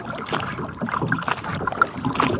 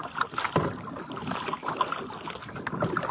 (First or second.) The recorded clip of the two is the first